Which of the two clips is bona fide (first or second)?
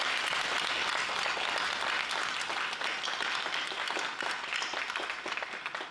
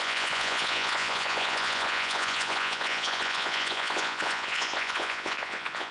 first